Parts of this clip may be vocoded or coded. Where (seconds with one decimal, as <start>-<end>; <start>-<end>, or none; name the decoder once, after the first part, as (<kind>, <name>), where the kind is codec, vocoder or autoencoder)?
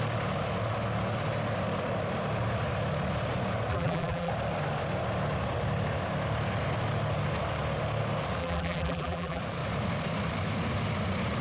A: 3.7-4.3 (vocoder, BigVGAN v2); 8.4-9.4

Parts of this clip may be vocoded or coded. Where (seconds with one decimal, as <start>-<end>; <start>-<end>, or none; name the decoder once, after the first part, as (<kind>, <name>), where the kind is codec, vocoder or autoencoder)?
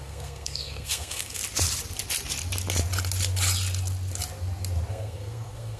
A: 0.0-1.4 (codec, SNAC); 4.9-5.8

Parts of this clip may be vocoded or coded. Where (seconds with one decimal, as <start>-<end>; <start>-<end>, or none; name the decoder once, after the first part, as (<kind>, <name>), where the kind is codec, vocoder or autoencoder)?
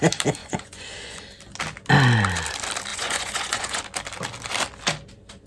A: 0.4-1.2 (vocoder, Vocos); 2.9-3.8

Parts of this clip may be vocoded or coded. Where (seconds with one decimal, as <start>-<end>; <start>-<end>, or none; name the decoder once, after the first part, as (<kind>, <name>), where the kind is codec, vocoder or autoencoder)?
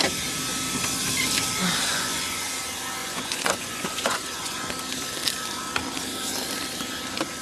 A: 1.9-2.5 (vocoder, Vocos); 3.0-4.7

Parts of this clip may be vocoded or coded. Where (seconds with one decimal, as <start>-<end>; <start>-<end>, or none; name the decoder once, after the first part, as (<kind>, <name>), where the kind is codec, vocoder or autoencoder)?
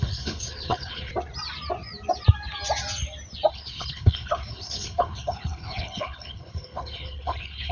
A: 0.0-1.1 (codec, HILCodec); 3.5-7.7